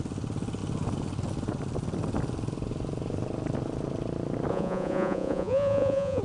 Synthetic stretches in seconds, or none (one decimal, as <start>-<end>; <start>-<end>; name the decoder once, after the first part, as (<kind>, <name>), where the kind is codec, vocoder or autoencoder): 4.5-6.2 (vocoder, Vocos)